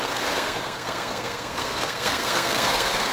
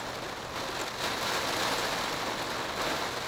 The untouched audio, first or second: second